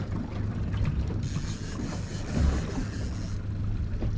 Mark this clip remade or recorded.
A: recorded